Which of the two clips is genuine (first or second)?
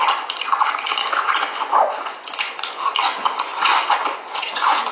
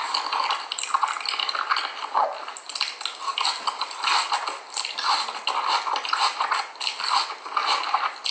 second